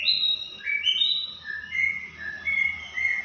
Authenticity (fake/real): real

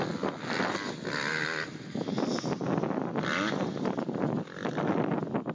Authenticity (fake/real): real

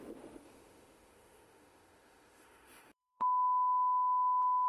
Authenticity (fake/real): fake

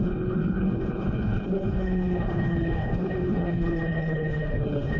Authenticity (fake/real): fake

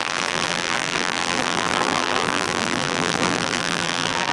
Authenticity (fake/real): fake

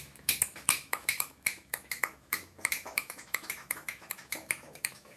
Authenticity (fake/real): fake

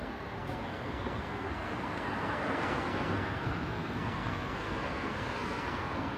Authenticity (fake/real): fake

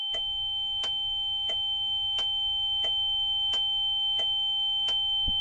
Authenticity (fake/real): fake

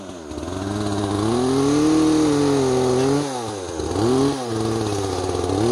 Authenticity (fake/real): real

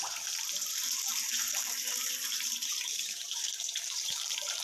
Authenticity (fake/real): fake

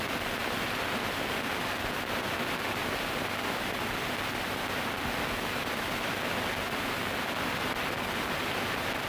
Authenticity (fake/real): real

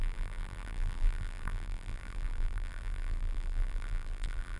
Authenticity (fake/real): fake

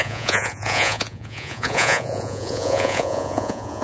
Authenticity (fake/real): fake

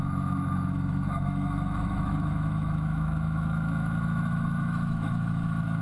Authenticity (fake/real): fake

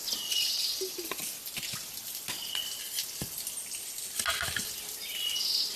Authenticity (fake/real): real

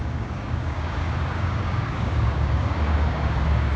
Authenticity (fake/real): fake